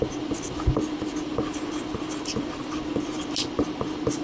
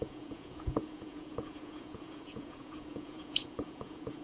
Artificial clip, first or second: second